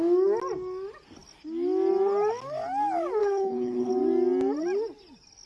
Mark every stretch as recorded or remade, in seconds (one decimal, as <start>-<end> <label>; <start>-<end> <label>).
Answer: 0.0-3.2 recorded; 3.2-3.9 remade; 3.9-5.5 recorded